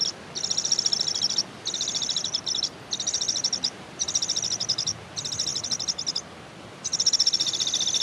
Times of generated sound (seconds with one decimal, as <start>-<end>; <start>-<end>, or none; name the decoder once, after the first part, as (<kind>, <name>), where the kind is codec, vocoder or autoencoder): none